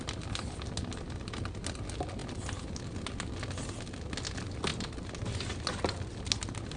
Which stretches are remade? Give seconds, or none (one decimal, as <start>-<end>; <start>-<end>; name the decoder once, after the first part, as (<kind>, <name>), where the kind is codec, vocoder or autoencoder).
none